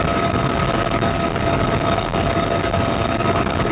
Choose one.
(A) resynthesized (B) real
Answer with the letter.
A